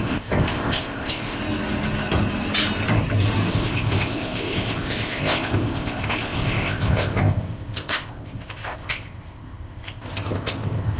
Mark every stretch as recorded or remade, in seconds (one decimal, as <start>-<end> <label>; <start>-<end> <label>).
0.0-1.4 remade; 1.4-3.5 recorded; 3.5-11.0 remade